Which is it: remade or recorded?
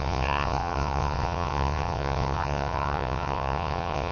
remade